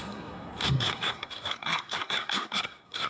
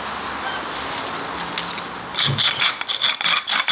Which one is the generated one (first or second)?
first